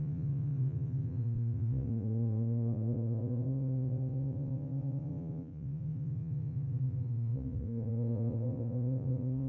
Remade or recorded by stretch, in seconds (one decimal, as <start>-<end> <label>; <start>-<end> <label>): 0.0-9.5 remade